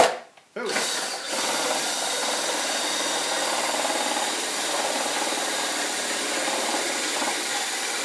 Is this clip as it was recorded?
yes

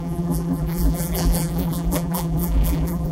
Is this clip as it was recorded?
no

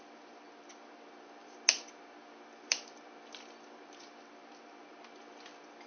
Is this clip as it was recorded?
yes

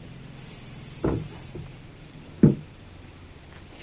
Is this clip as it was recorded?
yes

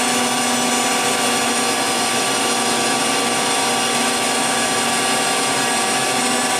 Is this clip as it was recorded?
yes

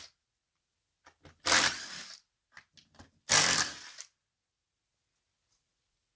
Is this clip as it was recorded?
yes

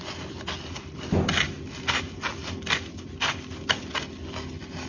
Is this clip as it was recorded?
yes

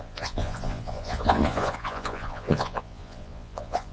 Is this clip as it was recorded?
no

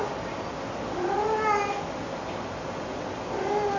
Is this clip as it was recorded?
yes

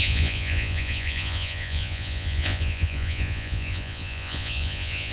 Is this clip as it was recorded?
no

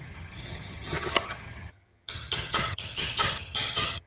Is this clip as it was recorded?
no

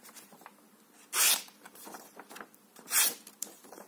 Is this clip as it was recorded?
no